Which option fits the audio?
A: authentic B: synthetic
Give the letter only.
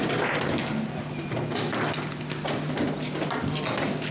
A